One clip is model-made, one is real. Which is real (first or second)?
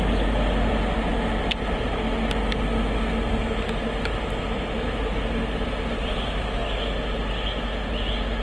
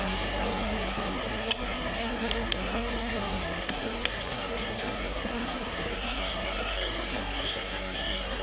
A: first